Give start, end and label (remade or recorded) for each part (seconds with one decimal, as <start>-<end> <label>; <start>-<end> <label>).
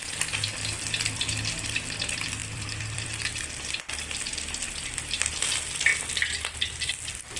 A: 0.0-2.4 recorded; 2.4-3.8 remade; 3.8-7.4 recorded